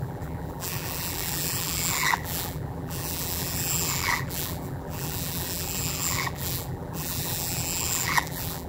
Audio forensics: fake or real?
fake